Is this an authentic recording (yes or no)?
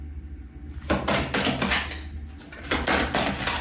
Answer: yes